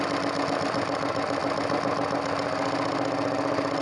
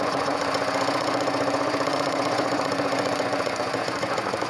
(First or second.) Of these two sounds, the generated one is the second